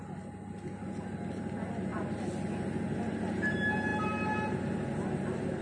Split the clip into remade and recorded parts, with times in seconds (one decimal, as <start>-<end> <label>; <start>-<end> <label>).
0.0-5.6 recorded